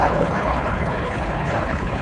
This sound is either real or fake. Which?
fake